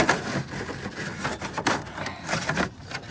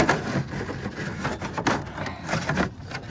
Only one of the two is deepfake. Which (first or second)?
first